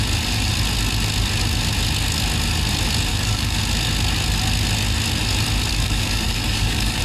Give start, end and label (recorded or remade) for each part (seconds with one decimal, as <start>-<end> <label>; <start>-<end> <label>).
0.0-3.1 recorded; 3.1-3.6 remade; 3.6-5.7 recorded; 5.7-7.0 remade